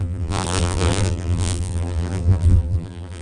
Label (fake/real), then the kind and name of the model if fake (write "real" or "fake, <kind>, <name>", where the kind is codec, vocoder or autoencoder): fake, vocoder, BigVGAN v2